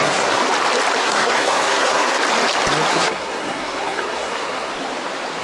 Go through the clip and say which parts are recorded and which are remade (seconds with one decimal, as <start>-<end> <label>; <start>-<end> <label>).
0.0-0.4 remade; 0.4-1.0 recorded; 1.0-2.2 remade; 2.2-2.9 recorded; 2.9-4.7 remade; 4.7-5.4 recorded